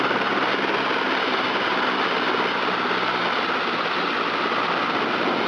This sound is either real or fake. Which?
real